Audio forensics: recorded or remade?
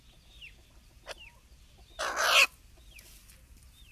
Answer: recorded